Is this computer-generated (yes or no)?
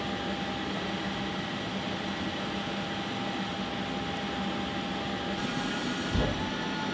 no